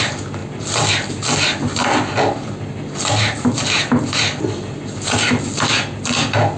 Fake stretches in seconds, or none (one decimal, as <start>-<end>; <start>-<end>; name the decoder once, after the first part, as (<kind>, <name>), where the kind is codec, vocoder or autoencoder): none